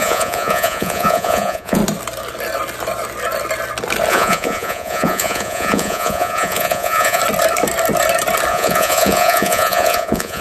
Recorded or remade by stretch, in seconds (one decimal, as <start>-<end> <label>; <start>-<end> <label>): 0.0-1.8 remade; 1.8-4.1 recorded; 4.1-7.2 remade; 7.2-8.5 recorded; 8.5-10.4 remade